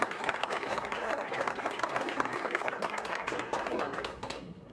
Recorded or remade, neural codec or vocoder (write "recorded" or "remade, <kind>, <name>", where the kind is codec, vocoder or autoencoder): remade, codec, SNAC